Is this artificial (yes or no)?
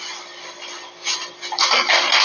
no